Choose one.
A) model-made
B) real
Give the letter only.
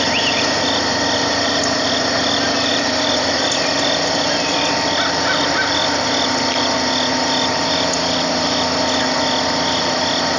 B